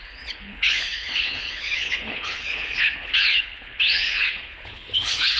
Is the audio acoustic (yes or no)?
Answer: no